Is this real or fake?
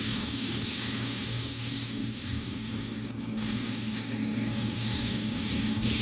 fake